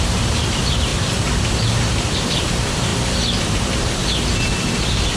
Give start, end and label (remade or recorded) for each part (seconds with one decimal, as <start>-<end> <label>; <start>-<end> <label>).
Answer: 0.0-2.9 remade; 2.9-3.5 recorded; 3.5-4.0 remade; 4.0-5.2 recorded